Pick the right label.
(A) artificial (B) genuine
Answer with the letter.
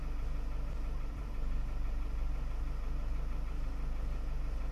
B